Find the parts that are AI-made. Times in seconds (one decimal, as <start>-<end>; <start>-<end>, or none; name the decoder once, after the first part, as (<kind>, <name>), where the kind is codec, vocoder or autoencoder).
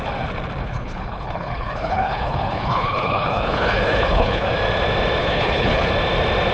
0.6-4.5 (codec, HILCodec); 5.2-5.9